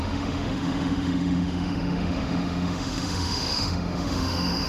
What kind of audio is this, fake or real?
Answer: fake